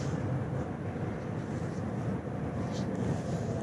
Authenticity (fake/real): real